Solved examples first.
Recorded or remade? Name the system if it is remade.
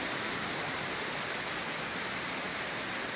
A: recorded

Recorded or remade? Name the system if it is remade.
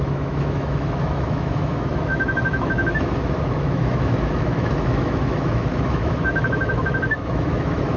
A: remade, autoencoder, DAC-VAE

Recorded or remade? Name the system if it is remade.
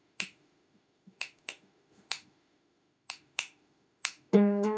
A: remade, autoencoder, DAC-VAE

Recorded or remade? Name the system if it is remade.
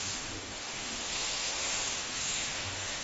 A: remade, autoencoder, DAC-VAE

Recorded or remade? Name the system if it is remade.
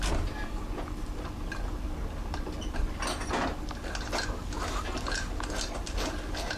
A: recorded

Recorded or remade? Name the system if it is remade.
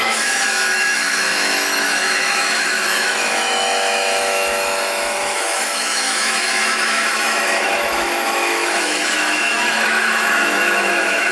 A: remade, autoencoder, DAC-VAE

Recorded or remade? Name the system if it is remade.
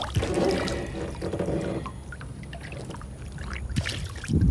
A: recorded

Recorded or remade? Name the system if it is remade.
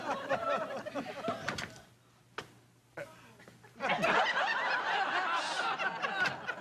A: recorded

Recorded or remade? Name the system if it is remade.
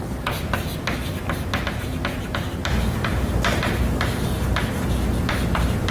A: recorded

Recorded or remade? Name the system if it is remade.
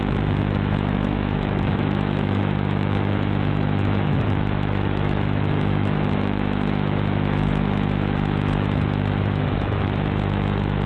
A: remade, autoencoder, DAC-VAE